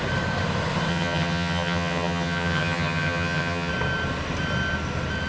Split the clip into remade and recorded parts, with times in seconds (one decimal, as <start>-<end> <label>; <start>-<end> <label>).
0.0-0.9 recorded; 0.9-3.7 remade; 3.7-5.3 recorded